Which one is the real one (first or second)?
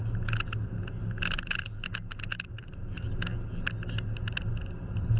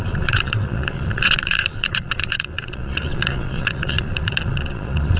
first